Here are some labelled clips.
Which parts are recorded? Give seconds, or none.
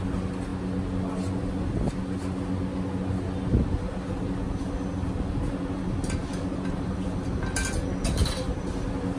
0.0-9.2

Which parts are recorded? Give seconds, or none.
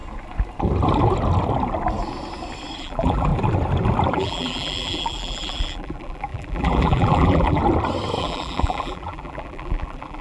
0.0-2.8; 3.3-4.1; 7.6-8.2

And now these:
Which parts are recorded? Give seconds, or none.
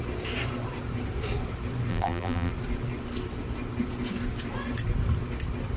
0.0-1.9; 2.5-5.8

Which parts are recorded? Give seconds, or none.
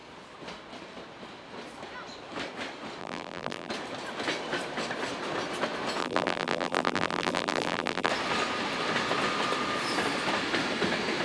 0.0-3.0; 3.7-6.0; 8.1-11.2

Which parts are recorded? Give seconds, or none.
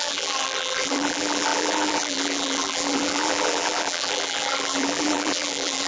none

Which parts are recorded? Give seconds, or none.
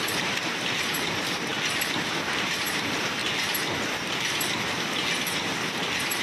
1.5-2.1; 3.2-5.7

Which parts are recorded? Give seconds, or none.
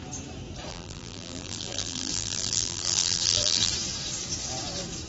0.0-0.7; 3.7-5.1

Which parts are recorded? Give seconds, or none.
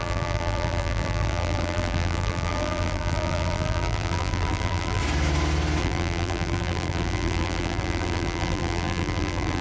5.0-5.8